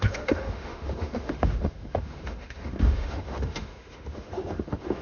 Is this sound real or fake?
fake